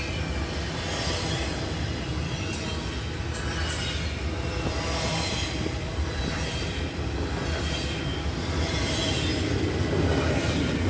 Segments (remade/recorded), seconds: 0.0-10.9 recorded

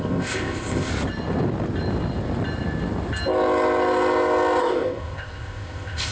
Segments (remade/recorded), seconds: 0.0-0.9 remade; 0.9-4.6 recorded; 4.6-6.1 remade